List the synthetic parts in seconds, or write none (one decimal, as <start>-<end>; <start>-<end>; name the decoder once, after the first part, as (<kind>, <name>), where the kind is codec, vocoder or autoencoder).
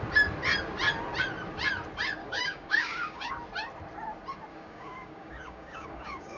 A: 2.2-3.3 (codec, DAC); 4.5-6.4